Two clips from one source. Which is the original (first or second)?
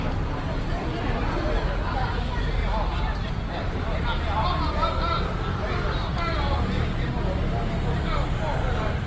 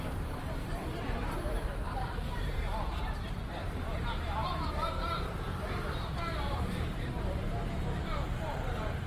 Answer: first